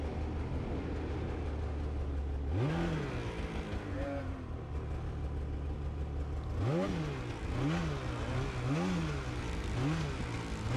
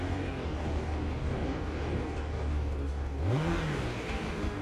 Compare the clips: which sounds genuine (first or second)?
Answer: first